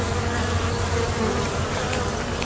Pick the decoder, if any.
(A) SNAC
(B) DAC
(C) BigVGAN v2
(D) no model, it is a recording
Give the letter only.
D